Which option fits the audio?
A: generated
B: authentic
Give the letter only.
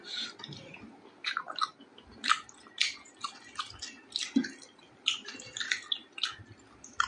B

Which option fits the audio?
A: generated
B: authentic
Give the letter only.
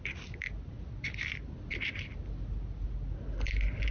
B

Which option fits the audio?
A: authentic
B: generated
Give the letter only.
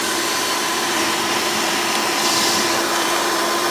B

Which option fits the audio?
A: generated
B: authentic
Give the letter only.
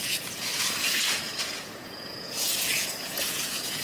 A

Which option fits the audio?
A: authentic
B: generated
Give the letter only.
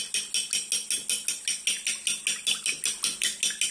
A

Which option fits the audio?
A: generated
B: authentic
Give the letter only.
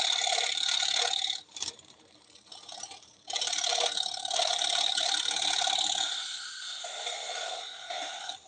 A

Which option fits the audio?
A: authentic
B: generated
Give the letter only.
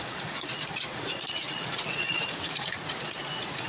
B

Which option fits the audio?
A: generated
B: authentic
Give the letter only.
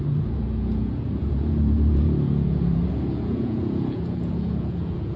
A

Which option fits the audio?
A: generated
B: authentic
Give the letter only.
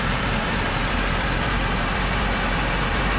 A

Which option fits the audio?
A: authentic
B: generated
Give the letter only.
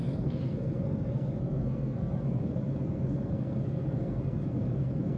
B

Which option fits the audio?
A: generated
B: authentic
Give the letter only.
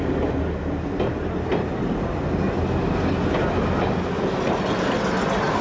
B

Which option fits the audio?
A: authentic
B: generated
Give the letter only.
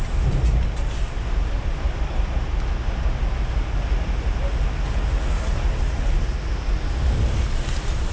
A